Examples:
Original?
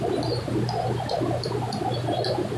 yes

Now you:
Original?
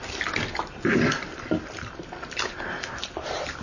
yes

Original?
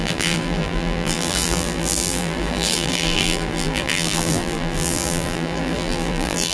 no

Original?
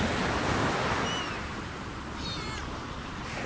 yes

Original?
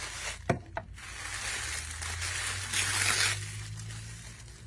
yes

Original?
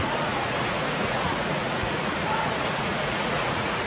no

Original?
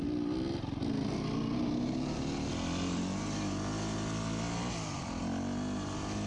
yes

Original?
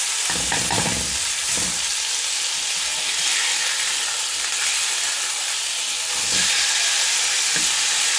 yes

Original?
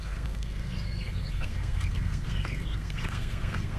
no